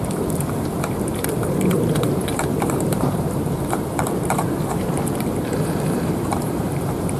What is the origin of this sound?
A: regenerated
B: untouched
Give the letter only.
A